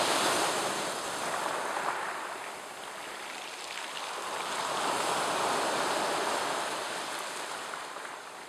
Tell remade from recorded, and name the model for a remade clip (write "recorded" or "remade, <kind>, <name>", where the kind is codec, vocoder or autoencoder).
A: remade, vocoder, BigVGAN v2